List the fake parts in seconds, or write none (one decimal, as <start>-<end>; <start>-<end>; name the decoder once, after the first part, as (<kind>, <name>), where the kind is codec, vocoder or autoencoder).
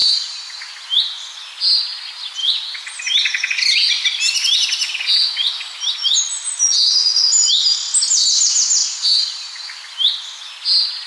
2.4-3.0 (vocoder, BigVGAN v2)